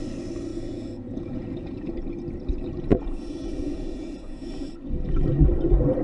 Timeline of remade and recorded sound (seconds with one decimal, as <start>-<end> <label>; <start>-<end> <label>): 0.0-0.5 recorded; 0.5-1.9 remade; 1.9-2.9 recorded; 2.9-4.7 remade; 4.7-6.0 recorded